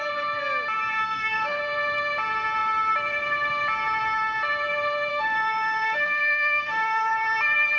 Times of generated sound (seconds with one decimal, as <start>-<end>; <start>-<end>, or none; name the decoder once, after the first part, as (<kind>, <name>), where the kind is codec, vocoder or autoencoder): 1.0-1.6 (autoencoder, DAC-VAE); 5.1-7.1